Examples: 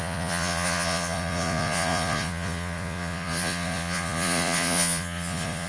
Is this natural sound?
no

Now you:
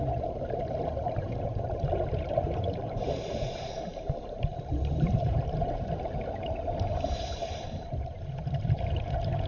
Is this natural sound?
no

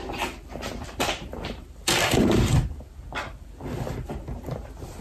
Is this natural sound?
no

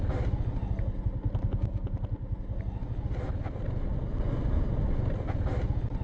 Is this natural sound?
yes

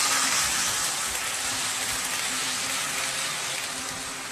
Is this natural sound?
yes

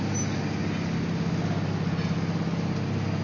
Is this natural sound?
yes